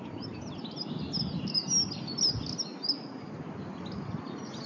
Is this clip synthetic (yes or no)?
no